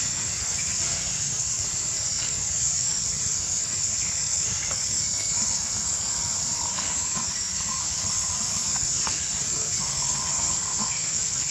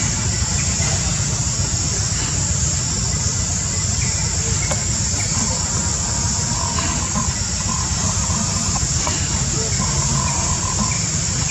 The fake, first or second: first